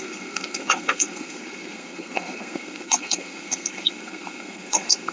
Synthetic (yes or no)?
yes